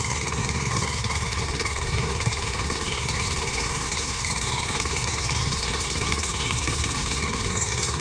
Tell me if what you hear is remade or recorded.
remade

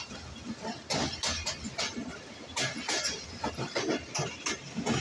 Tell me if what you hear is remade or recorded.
recorded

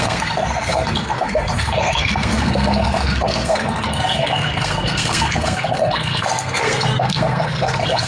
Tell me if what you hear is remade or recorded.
remade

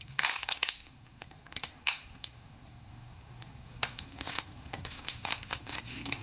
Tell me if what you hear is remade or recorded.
remade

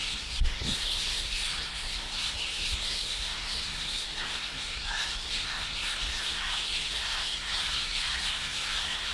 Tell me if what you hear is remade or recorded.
remade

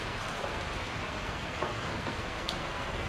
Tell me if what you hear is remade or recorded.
remade